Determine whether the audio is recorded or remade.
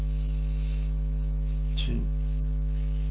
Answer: remade